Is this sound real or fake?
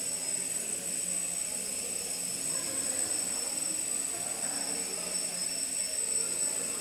real